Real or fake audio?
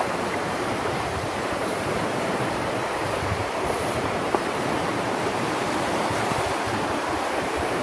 fake